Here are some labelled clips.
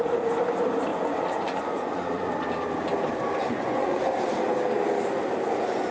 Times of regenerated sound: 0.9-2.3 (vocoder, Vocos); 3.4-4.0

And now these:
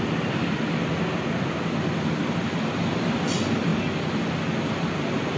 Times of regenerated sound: none

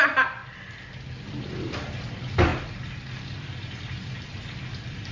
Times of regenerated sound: none

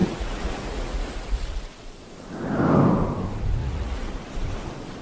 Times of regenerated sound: 0.0-1.0 (vocoder, Vocos); 3.6-4.1